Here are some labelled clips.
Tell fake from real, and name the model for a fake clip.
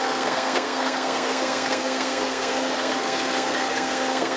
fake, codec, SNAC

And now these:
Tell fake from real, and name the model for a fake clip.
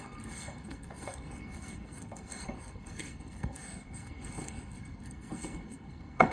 fake, codec, SNAC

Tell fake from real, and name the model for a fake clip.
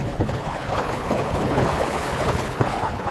fake, codec, HILCodec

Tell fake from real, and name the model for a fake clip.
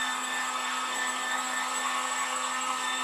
fake, codec, SNAC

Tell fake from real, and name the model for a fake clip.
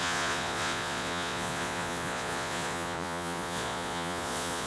fake, vocoder, Vocos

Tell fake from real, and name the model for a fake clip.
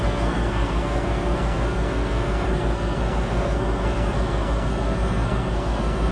fake, codec, SNAC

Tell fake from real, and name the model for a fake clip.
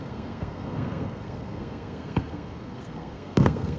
fake, codec, SNAC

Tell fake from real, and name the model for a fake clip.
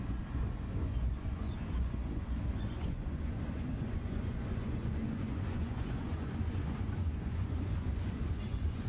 fake, vocoder, Vocos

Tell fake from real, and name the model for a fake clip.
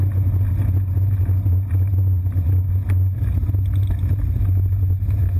real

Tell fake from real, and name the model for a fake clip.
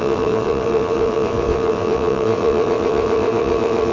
fake, vocoder, WaveNeXt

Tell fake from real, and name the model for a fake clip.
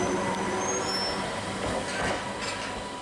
real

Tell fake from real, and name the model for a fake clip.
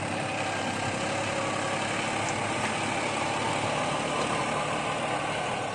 real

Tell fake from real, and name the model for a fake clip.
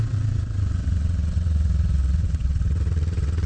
fake, vocoder, WaveNeXt